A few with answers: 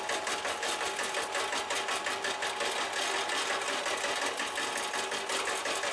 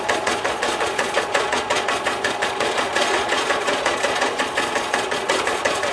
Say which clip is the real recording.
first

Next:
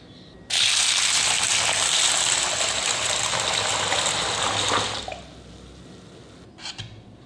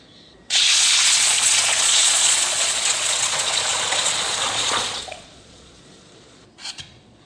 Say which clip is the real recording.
first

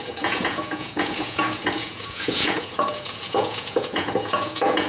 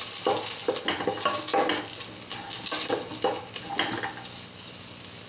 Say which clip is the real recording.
second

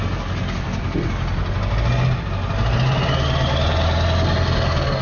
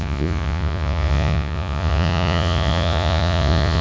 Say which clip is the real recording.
first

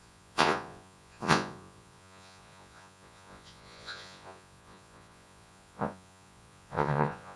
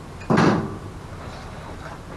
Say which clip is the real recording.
second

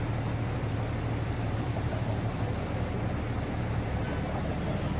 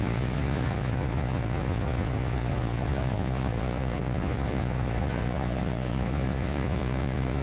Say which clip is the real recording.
first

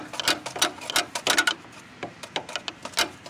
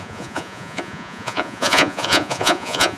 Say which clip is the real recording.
first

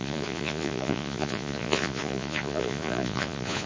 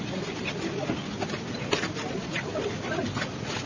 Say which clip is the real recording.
second